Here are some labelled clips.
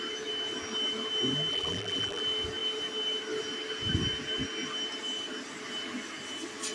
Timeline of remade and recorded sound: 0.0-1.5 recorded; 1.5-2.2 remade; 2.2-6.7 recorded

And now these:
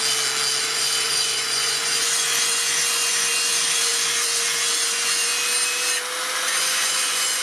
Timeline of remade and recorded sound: 0.0-0.6 recorded; 0.6-5.3 remade; 5.3-6.4 recorded; 6.4-7.4 remade

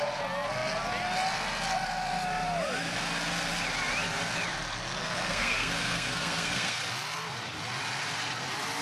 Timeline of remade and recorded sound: 0.0-5.0 recorded; 5.0-6.8 remade; 6.8-8.8 recorded

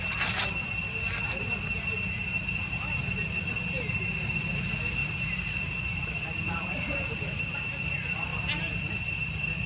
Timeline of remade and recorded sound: 0.0-5.0 recorded; 5.0-7.6 remade; 7.6-9.7 recorded

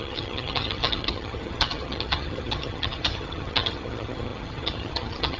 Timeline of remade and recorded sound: 0.0-5.4 remade